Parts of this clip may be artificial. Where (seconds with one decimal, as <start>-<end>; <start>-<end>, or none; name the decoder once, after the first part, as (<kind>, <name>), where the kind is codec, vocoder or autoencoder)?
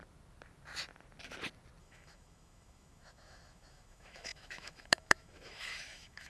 1.8-6.3 (autoencoder, DAC-VAE)